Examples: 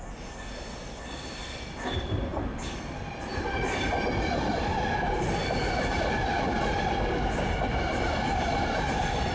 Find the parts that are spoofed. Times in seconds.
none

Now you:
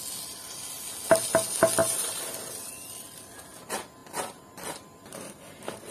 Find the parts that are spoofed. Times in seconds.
1.8-2.5 (vocoder, BigVGAN v2)